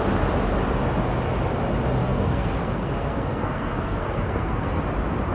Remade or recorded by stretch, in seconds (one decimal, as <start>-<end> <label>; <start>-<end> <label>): 0.0-2.0 recorded; 2.0-4.8 remade; 4.8-5.3 recorded